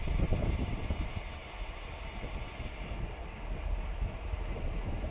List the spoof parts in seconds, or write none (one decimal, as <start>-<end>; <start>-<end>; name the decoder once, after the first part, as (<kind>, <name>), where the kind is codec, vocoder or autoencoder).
none